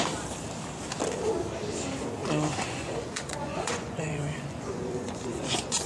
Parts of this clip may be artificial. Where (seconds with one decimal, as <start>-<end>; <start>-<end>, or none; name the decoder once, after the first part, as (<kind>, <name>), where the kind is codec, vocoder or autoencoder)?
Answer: 2.2-5.9 (vocoder, Vocos)